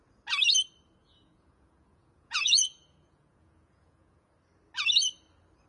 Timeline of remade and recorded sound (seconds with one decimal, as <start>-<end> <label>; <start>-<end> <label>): 0.0-1.0 recorded; 1.0-4.3 remade; 4.3-5.7 recorded